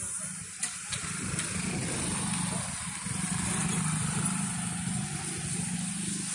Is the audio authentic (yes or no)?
yes